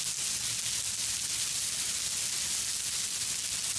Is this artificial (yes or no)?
no